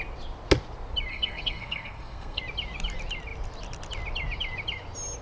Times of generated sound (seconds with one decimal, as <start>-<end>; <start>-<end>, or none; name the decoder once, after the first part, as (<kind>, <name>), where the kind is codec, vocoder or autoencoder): 1.1-2.4 (codec, SNAC)